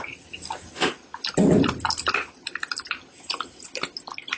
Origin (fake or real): real